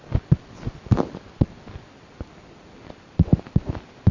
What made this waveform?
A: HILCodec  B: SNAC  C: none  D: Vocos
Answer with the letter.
C